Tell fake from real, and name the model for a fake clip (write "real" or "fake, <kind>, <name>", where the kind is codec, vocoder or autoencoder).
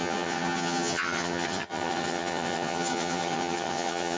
fake, vocoder, HiFi-GAN